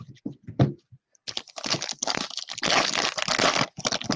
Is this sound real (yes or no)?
yes